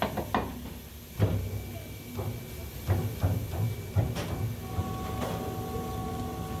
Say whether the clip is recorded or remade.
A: recorded